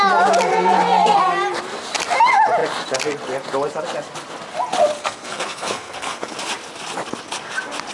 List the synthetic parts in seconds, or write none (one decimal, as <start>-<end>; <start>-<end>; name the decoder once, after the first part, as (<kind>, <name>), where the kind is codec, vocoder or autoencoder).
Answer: 0.5-1.2 (codec, SNAC); 5.0-6.3